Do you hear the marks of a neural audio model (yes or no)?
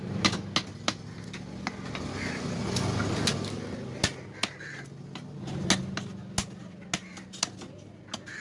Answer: no